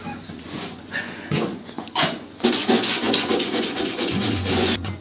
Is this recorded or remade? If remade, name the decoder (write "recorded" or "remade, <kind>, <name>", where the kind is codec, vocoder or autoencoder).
remade, vocoder, Vocos